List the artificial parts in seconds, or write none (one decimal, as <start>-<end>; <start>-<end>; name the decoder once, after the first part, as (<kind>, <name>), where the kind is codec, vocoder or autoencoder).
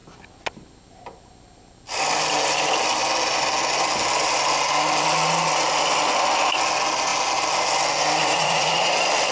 8.2-8.9 (vocoder, Vocos)